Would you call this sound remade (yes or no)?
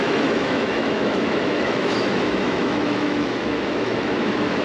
yes